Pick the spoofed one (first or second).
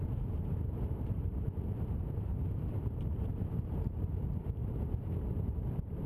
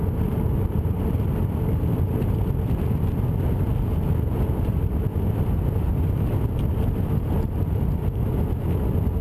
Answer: first